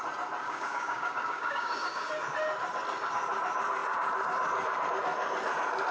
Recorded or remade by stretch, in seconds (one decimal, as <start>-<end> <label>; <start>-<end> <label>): 0.0-0.4 recorded; 0.4-2.1 remade; 2.1-5.9 recorded